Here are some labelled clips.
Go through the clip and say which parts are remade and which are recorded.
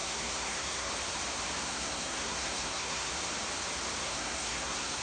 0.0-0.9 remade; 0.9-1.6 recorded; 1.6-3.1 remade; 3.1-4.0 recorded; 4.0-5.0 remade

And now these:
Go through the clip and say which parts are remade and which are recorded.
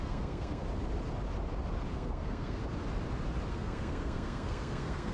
0.0-0.6 remade; 0.6-1.9 recorded; 1.9-2.6 remade; 2.6-3.5 recorded; 3.5-5.1 remade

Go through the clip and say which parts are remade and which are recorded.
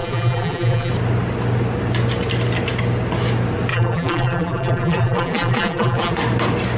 0.0-0.9 remade; 0.9-3.7 recorded; 3.7-6.1 remade; 6.1-6.8 recorded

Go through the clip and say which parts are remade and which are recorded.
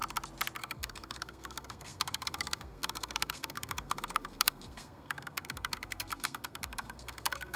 0.0-0.6 recorded; 0.6-7.6 remade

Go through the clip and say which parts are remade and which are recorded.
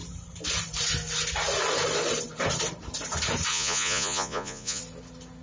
0.0-3.5 recorded; 3.5-4.8 remade; 4.8-5.4 recorded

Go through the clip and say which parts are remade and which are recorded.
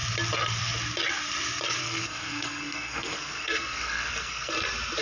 0.0-1.8 recorded; 1.8-4.5 remade; 4.5-5.0 recorded